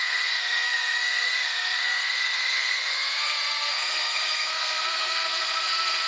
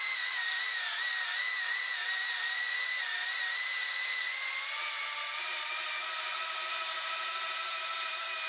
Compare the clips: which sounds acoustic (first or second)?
second